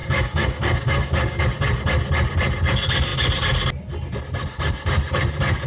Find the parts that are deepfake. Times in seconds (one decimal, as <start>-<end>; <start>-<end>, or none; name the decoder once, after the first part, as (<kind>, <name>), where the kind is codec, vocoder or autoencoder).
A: 0.0-1.4 (codec, DAC)